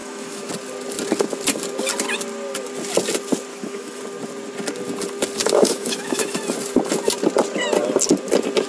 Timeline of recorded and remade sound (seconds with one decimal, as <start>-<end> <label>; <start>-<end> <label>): 0.0-0.5 remade; 0.5-3.5 recorded; 3.5-4.0 remade; 4.0-5.4 recorded; 5.4-6.4 remade; 6.4-8.7 recorded